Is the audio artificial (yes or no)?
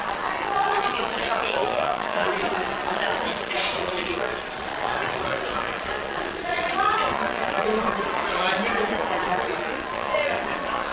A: yes